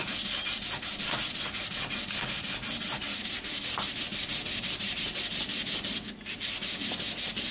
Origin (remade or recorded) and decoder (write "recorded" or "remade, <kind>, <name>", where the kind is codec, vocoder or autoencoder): recorded